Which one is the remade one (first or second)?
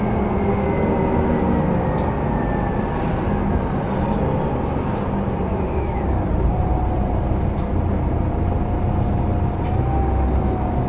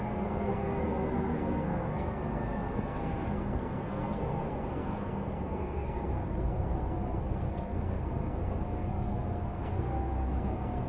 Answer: second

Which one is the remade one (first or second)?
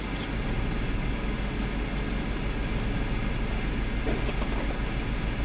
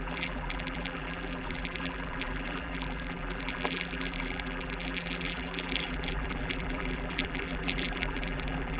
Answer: second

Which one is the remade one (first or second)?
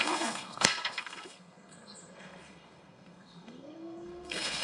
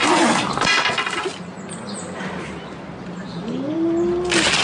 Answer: first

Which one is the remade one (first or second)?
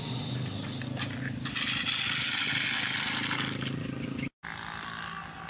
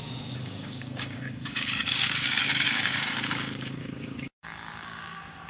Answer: second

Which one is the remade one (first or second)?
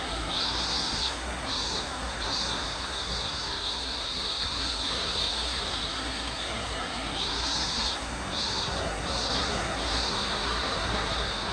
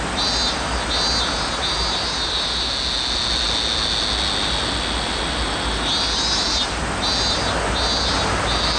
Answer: first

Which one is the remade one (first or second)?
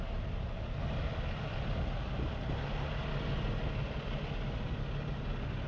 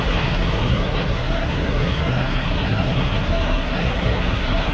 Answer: second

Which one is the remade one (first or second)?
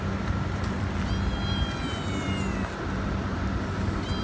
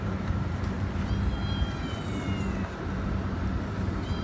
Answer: second